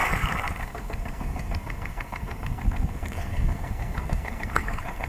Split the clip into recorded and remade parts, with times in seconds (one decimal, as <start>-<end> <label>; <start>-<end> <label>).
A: 0.0-5.1 remade